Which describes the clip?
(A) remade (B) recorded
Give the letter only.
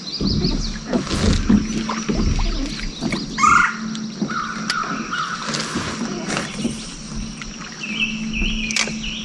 B